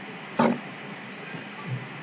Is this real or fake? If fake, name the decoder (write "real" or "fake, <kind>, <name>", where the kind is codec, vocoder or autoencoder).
real